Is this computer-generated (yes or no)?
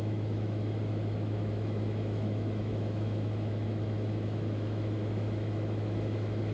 yes